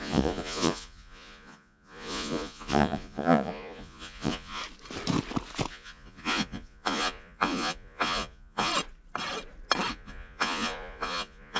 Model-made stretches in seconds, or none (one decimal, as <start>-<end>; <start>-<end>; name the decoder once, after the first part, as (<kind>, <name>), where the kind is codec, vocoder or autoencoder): 0.0-4.6 (vocoder, Vocos); 5.7-8.7; 9.9-11.6